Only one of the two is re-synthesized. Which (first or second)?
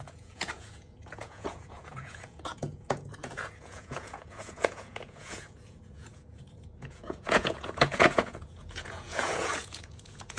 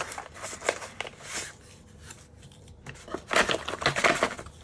first